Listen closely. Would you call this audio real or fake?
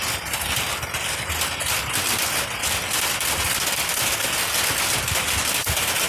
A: real